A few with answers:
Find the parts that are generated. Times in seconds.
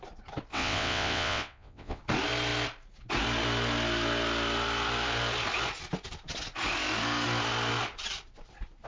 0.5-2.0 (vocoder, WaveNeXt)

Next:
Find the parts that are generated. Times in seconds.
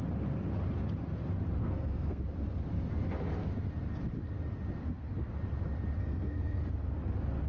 1.6-2.2 (codec, SNAC); 4.8-5.3; 6.0-6.6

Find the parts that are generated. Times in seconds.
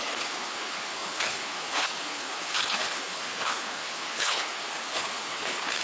0.0-5.8 (codec, HILCodec)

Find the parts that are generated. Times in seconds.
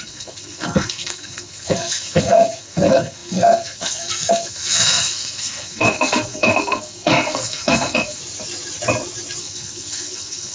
0.0-8.2 (codec, SNAC); 9.4-10.5